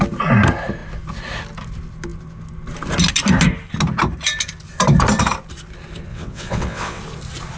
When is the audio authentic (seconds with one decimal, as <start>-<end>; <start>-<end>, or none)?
0.0-6.1; 7.0-7.6